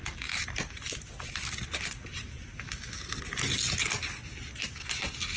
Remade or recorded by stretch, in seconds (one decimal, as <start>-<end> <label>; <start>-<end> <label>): 0.0-5.4 recorded